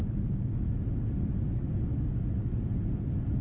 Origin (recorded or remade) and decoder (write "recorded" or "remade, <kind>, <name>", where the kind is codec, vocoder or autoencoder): recorded